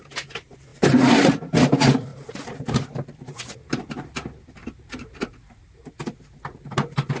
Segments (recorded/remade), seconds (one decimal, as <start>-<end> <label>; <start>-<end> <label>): 0.0-0.7 recorded; 0.7-1.3 remade; 1.3-2.1 recorded; 2.1-4.1 remade; 4.1-4.6 recorded; 4.6-5.9 remade; 5.9-7.2 recorded

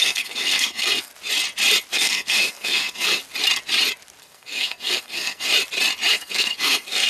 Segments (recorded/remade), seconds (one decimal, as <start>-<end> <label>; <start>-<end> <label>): 0.0-1.1 remade; 1.1-1.9 recorded; 1.9-3.2 remade; 3.2-4.2 recorded; 4.2-5.5 remade; 5.5-6.1 recorded; 6.1-7.1 remade